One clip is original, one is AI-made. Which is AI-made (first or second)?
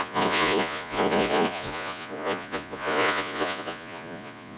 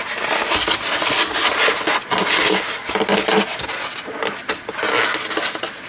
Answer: first